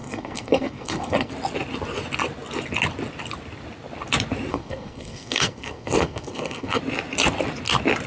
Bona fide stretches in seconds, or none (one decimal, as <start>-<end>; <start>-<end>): 1.3-4.5; 6.8-8.1